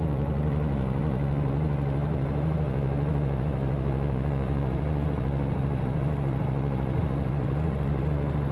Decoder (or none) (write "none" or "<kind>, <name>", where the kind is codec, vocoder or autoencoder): vocoder, Vocos